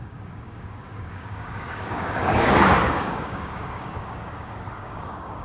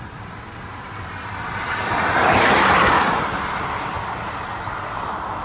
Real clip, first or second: second